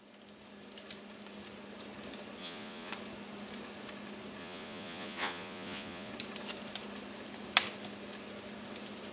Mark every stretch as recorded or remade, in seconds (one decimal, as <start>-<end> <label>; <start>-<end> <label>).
0.0-2.4 recorded; 2.4-2.9 remade; 2.9-4.4 recorded; 4.4-6.1 remade; 6.1-9.1 recorded